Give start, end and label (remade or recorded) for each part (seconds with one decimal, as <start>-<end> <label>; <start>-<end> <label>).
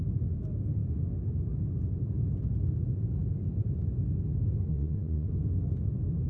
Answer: 0.0-4.7 recorded; 4.7-5.3 remade; 5.3-6.3 recorded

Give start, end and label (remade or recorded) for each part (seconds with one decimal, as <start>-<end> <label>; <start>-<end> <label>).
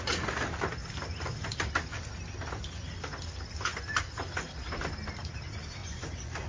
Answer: 0.0-5.8 recorded; 5.8-6.5 remade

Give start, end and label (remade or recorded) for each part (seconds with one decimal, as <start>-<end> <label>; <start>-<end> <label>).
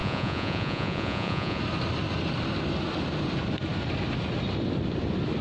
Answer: 0.0-1.6 remade; 1.6-5.4 recorded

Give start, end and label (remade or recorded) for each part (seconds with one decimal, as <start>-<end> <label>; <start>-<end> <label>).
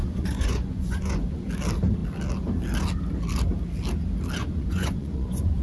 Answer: 0.0-1.5 remade; 1.5-4.4 recorded; 4.4-5.6 remade